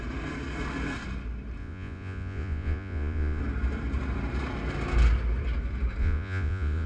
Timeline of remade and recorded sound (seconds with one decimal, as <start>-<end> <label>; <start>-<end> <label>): 0.0-1.6 recorded; 1.6-3.4 remade; 3.4-6.0 recorded; 6.0-6.9 remade